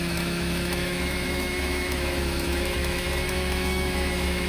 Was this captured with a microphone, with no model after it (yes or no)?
no